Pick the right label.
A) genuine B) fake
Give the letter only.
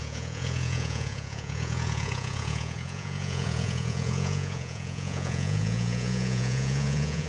B